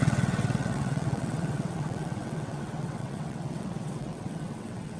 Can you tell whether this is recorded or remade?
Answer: remade